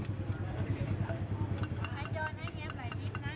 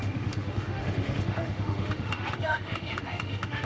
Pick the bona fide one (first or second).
first